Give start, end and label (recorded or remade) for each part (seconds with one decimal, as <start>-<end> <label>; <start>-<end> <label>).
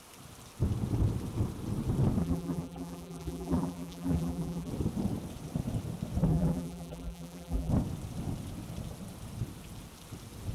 0.0-2.2 recorded; 2.2-4.7 remade; 4.7-6.3 recorded; 6.3-7.7 remade; 7.7-10.5 recorded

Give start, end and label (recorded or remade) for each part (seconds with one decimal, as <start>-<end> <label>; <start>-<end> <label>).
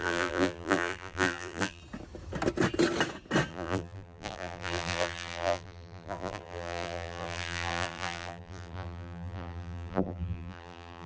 0.0-1.8 remade; 1.8-3.5 recorded; 3.5-11.1 remade